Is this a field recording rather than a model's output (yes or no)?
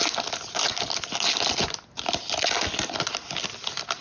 yes